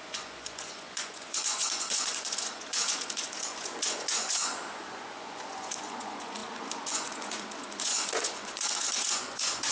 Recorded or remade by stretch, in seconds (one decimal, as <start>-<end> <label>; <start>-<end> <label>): 0.0-9.7 remade